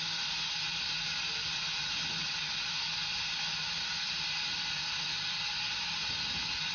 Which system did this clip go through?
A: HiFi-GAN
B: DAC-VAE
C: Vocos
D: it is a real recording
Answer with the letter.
D